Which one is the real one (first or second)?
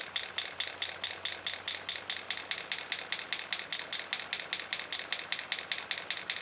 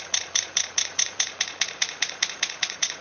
first